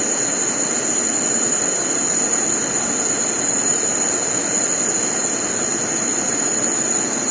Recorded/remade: recorded